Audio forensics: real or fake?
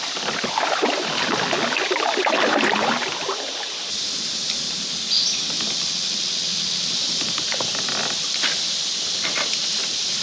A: real